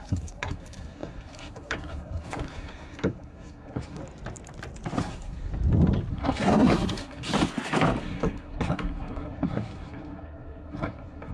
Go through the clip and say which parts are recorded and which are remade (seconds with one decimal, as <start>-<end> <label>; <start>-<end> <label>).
0.0-4.0 remade; 4.0-5.0 recorded; 5.0-5.5 remade; 5.5-6.1 recorded; 6.1-7.3 remade; 7.3-8.0 recorded; 8.0-11.3 remade